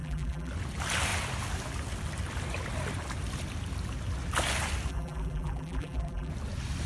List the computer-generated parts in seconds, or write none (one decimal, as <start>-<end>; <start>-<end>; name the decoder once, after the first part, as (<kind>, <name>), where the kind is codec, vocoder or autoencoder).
0.0-0.5 (vocoder, BigVGAN v2); 4.9-6.3